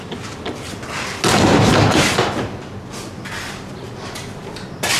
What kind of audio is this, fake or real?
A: real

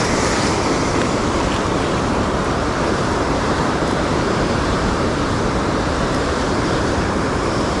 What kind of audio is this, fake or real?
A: fake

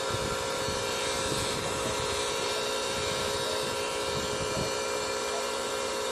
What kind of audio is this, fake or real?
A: fake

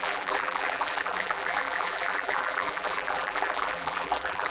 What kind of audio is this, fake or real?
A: fake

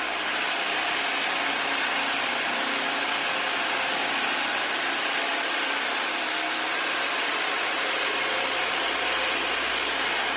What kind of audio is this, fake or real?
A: real